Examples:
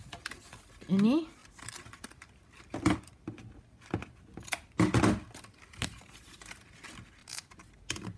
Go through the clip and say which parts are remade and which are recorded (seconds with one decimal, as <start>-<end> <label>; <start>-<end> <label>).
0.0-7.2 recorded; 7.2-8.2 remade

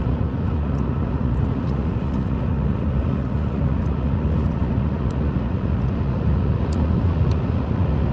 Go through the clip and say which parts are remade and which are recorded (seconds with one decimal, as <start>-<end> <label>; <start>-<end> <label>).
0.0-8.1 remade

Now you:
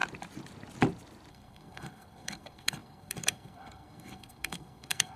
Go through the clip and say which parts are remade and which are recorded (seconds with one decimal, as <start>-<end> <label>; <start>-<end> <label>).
0.0-1.3 recorded; 1.3-5.2 remade

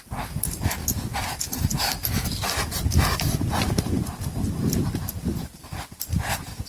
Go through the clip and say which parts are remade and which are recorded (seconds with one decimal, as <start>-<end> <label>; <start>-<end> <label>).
0.0-6.7 recorded

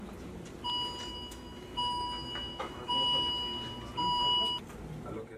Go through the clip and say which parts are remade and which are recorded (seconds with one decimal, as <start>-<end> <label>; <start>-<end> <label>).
0.0-1.1 recorded; 1.1-3.3 remade; 3.3-5.4 recorded